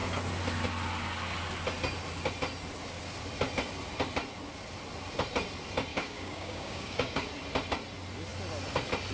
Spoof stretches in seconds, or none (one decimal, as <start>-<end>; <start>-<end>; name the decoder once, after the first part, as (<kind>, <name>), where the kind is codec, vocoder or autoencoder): 5.9-7.3 (codec, DAC)